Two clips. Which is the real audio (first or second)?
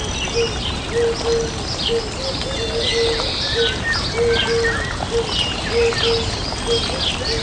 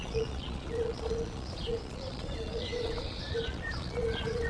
first